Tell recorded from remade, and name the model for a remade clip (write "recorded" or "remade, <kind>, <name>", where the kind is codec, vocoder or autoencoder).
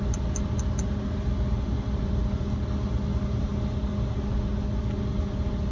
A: recorded